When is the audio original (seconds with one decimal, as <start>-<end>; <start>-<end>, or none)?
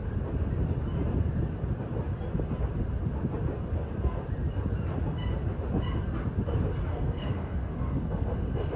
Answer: 0.0-6.9